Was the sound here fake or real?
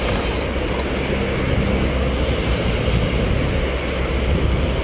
real